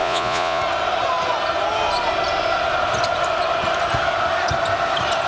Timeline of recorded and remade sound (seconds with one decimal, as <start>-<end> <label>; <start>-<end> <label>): 0.0-0.6 remade; 0.6-5.3 recorded